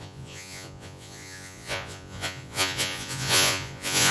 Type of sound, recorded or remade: remade